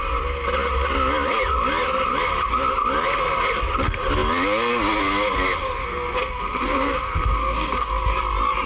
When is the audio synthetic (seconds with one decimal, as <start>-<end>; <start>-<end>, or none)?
5.6-7.9